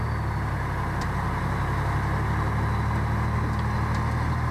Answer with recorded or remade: recorded